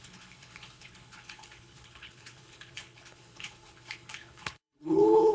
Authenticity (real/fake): fake